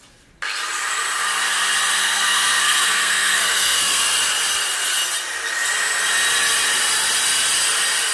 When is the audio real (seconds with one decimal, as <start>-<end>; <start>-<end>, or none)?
0.0-2.0; 4.0-8.1

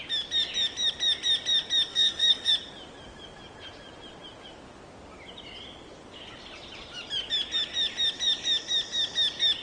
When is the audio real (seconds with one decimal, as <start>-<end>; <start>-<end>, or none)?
0.0-1.9; 2.5-9.6

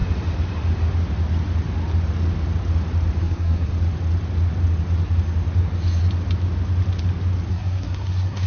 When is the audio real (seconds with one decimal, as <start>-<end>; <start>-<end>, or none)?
0.0-3.2; 3.7-7.5

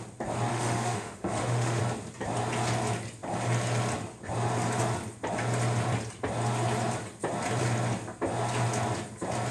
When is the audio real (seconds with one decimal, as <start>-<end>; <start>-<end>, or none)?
0.0-0.5; 1.8-9.5

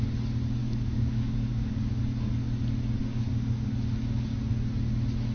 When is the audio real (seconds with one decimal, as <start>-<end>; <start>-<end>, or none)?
0.0-0.6; 2.0-3.0; 3.7-5.3

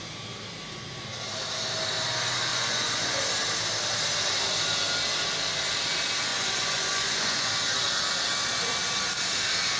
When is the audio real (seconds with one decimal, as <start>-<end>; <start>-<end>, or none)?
0.0-2.5; 3.2-6.3; 7.5-9.8